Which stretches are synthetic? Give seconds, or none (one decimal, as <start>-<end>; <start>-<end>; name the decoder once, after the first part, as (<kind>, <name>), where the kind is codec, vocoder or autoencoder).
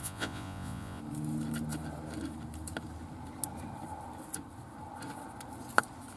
0.0-1.0 (vocoder, Vocos)